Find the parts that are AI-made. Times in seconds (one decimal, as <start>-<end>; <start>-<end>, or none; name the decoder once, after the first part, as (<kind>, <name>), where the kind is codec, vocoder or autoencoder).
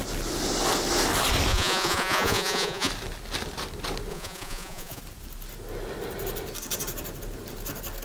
1.5-2.9 (vocoder, Vocos); 4.1-5.0